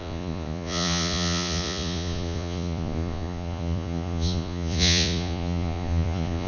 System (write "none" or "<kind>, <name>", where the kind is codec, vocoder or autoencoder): vocoder, Vocos